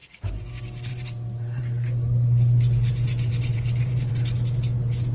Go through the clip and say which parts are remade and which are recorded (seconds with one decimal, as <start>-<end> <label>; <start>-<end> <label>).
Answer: 0.0-0.5 remade; 0.5-0.9 recorded; 0.9-1.6 remade; 1.6-3.3 recorded; 3.3-4.1 remade; 4.1-5.1 recorded